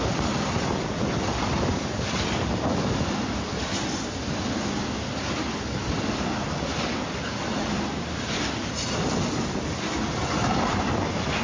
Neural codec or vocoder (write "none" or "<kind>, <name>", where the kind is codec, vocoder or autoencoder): none